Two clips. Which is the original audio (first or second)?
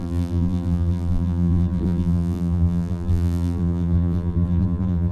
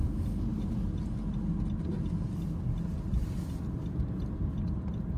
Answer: second